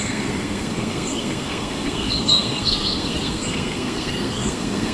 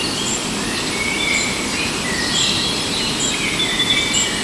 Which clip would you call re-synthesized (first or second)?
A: first